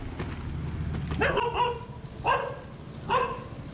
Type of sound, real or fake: real